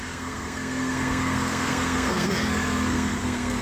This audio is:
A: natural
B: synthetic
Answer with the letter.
B